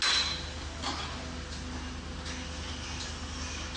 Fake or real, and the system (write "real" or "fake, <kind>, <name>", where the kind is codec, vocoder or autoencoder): real